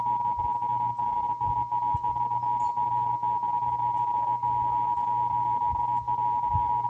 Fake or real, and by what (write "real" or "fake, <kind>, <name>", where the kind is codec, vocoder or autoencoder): real